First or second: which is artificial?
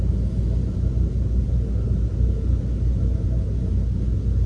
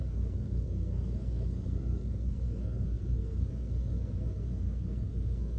second